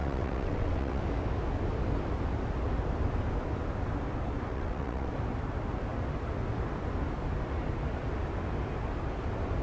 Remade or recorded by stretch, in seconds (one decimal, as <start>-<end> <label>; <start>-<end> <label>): 0.0-1.0 remade; 1.0-4.5 recorded; 4.5-5.1 remade; 5.1-9.6 recorded